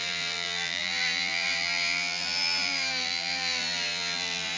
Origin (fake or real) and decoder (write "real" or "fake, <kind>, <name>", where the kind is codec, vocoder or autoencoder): fake, vocoder, BigVGAN v2